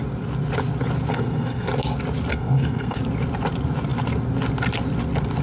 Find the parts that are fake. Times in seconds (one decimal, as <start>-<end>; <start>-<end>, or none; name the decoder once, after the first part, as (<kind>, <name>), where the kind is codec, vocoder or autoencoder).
1.1-1.7 (codec, SNAC); 2.3-3.0